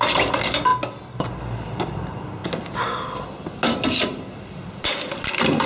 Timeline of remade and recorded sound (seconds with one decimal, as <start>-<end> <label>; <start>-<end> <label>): 0.0-5.7 recorded